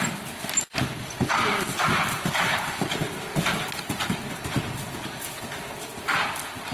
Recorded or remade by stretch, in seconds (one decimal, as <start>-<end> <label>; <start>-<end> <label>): 0.0-1.9 recorded; 1.9-5.9 remade; 5.9-6.7 recorded